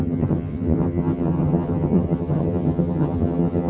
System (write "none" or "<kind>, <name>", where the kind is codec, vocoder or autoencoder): vocoder, HiFi-GAN